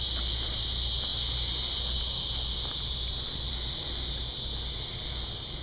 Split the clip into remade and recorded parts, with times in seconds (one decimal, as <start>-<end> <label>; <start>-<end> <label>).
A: 0.0-5.6 recorded